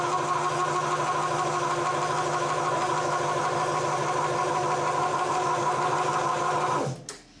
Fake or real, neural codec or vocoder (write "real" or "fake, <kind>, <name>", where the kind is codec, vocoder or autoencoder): real